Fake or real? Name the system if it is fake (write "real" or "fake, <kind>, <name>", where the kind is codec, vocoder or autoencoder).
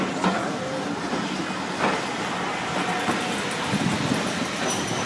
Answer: real